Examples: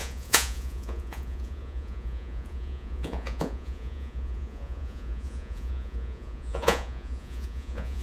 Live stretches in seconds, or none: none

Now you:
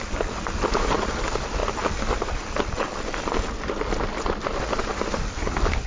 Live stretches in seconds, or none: 0.0-5.9

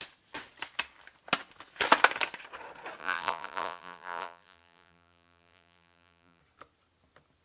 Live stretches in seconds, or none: 0.0-3.0; 6.4-7.4